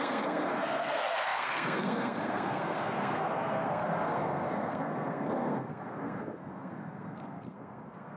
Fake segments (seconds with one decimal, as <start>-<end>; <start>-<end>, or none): 0.0-8.2